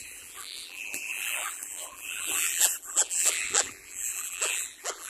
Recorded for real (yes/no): no